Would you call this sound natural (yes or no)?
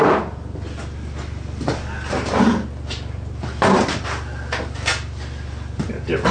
yes